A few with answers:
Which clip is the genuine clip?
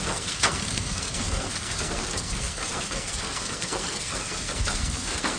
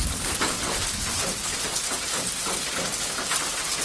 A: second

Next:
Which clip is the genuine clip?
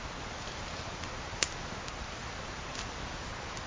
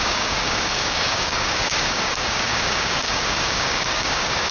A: first